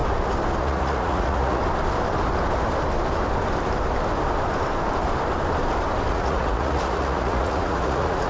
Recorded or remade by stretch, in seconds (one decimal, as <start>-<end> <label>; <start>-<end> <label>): 0.0-0.6 recorded; 0.6-1.6 remade; 1.6-6.1 recorded; 6.1-8.3 remade

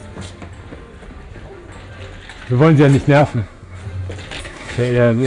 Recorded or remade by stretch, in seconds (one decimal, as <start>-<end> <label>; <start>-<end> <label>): 0.0-3.2 recorded; 3.2-3.8 remade; 3.8-4.4 recorded; 4.4-5.3 remade

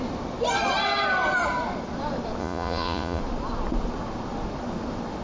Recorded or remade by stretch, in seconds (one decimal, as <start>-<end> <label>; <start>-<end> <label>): 0.0-2.4 recorded; 2.4-3.2 remade; 3.2-5.2 recorded

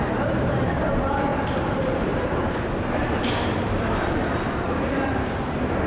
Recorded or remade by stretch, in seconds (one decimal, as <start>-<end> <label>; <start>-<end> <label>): 0.0-5.9 remade

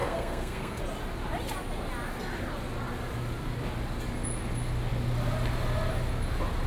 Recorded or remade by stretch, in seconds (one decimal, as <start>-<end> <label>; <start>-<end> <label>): 0.0-0.8 remade; 0.8-6.7 recorded

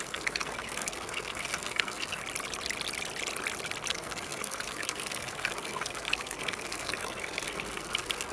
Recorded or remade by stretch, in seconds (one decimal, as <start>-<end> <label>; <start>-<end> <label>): 0.0-2.2 remade; 2.2-3.9 recorded; 3.9-8.3 remade

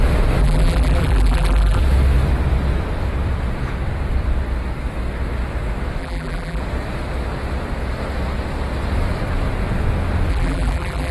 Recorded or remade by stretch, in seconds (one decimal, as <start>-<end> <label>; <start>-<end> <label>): 0.0-0.4 recorded; 0.4-1.8 remade; 1.8-6.0 recorded; 6.0-6.6 remade; 6.6-10.3 recorded; 10.3-11.1 remade